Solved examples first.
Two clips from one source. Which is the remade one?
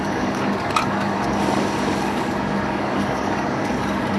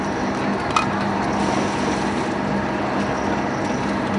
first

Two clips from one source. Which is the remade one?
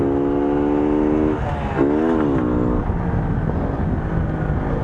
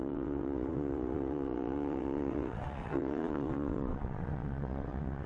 second